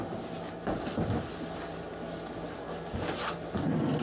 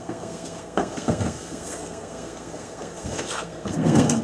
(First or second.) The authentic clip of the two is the first